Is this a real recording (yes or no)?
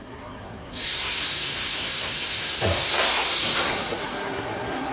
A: no